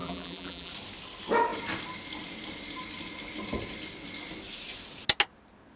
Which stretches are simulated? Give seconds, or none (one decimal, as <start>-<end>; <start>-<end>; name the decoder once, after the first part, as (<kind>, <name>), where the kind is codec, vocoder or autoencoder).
0.0-0.7 (vocoder, BigVGAN v2)